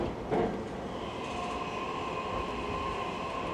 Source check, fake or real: real